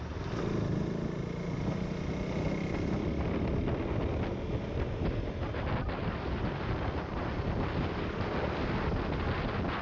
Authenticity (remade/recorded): recorded